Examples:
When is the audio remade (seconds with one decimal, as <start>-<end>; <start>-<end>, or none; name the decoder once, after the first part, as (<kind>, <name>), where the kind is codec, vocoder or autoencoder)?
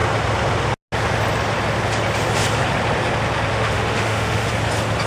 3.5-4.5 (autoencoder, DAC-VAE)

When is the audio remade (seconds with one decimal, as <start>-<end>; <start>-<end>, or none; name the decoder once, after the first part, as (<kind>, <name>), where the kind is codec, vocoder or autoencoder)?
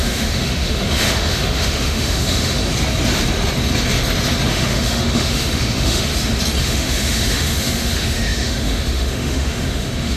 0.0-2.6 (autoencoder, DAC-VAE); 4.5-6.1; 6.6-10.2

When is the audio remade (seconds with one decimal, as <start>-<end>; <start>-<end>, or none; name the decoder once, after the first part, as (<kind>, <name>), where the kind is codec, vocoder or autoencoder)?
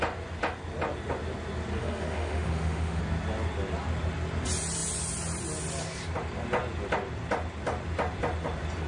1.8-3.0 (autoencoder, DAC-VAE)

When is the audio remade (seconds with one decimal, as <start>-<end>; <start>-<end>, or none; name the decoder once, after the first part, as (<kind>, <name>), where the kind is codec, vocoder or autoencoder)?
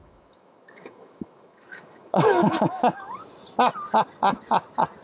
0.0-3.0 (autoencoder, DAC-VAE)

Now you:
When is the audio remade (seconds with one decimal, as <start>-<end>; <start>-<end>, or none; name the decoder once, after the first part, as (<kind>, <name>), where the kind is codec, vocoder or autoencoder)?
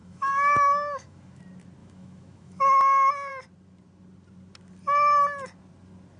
0.0-1.4 (autoencoder, DAC-VAE); 1.8-2.8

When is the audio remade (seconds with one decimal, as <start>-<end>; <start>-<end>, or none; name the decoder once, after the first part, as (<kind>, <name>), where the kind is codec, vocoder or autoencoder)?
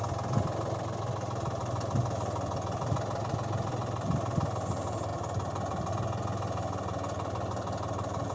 none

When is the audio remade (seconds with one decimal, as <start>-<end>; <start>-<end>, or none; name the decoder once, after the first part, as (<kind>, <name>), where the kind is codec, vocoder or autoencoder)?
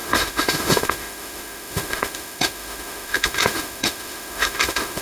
0.0-5.0 (autoencoder, DAC-VAE)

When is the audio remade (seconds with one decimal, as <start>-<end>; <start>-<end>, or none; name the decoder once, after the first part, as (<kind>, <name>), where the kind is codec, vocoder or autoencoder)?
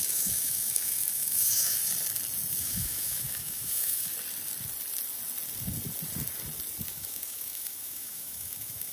0.0-1.8 (autoencoder, DAC-VAE); 2.6-4.1; 6.9-8.9